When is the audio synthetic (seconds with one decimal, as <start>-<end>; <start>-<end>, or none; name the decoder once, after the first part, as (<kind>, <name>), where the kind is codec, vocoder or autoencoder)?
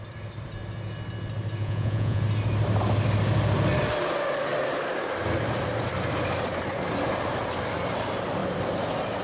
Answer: 1.6-2.2 (vocoder, Vocos)